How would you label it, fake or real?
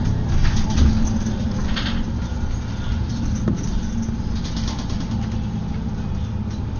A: real